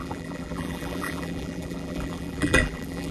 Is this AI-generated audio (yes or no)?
yes